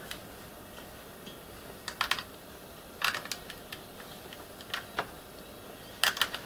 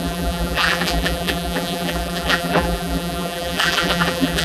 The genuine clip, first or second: first